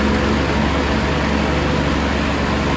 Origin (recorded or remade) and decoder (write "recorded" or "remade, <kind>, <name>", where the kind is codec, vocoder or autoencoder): recorded